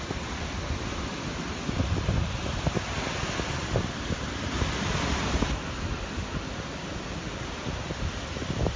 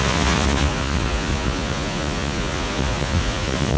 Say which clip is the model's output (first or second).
second